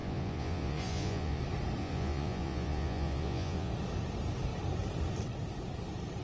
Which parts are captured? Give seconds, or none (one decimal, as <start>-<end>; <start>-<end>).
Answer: 1.4-1.8; 3.7-6.2